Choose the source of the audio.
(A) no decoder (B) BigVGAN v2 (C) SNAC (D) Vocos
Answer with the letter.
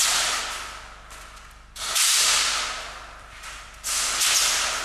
A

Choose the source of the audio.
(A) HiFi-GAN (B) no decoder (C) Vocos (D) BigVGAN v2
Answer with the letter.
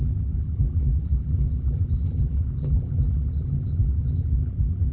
D